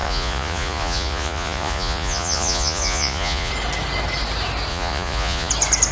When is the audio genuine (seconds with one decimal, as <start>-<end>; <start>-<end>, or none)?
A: 3.5-4.7; 5.5-5.9